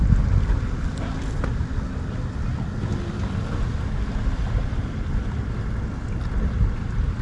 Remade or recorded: recorded